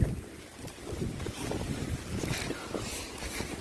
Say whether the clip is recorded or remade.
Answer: recorded